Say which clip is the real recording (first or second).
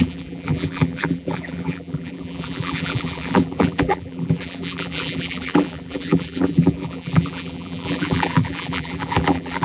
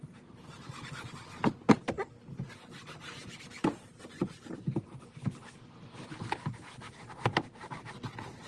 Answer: second